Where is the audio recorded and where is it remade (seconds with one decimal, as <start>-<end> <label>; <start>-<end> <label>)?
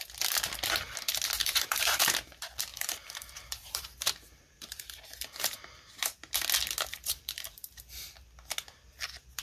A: 0.0-1.4 recorded; 1.4-2.0 remade; 2.0-2.7 recorded; 2.7-5.6 remade; 5.6-6.9 recorded; 6.9-7.7 remade; 7.7-9.4 recorded